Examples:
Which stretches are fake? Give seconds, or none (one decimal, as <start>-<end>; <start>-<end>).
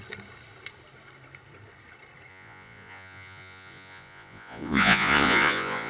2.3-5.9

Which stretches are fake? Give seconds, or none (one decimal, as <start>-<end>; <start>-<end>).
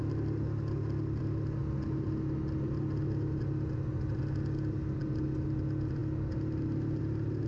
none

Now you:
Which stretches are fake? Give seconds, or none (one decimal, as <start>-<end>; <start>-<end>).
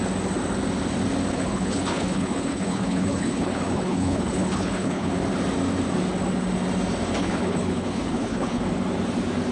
1.3-5.1; 7.2-8.6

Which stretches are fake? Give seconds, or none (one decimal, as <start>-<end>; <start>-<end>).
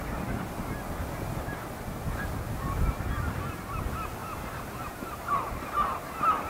4.2-6.0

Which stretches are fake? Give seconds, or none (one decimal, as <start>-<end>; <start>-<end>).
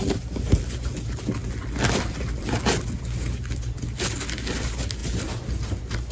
none